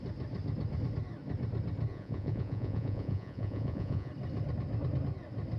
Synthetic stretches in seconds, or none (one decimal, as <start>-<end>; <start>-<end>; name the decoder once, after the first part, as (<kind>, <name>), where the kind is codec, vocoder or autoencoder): 1.9-4.1 (vocoder, Vocos)